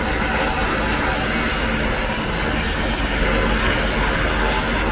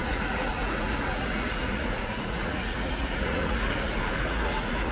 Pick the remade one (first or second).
second